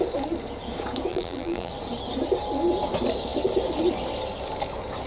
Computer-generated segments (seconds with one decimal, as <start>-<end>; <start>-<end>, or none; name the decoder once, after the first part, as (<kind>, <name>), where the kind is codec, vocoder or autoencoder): 1.1-1.7 (vocoder, BigVGAN v2)